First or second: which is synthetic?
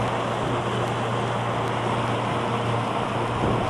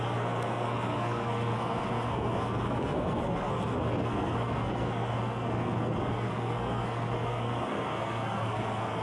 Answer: second